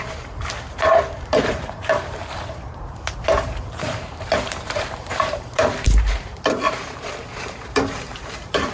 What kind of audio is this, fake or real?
fake